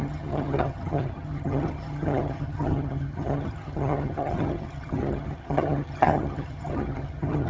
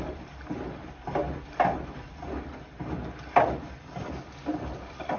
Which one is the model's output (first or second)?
first